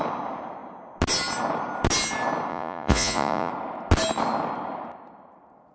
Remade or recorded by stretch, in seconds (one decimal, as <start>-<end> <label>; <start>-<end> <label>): 0.0-2.5 recorded; 2.5-3.5 remade; 3.5-5.7 recorded